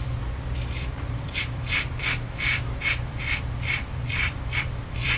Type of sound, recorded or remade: remade